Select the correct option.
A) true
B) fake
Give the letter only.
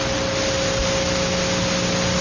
A